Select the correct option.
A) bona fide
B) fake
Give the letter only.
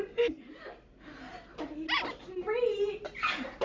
A